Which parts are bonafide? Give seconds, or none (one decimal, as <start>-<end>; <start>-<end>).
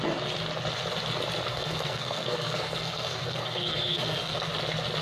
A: 0.0-1.5; 4.5-5.0